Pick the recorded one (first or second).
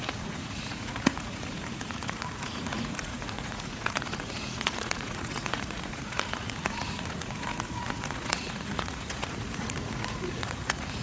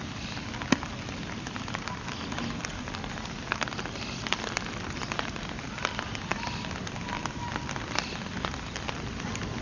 second